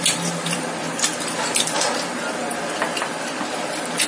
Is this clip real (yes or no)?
yes